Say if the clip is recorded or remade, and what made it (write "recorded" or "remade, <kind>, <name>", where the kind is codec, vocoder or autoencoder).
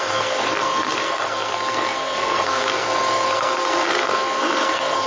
remade, codec, SNAC